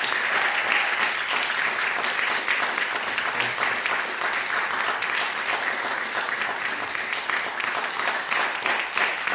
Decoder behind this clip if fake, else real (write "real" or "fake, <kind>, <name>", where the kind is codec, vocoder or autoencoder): real